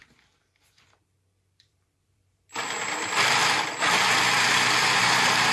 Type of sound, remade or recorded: remade